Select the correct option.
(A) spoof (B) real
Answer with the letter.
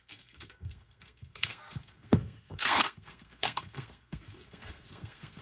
A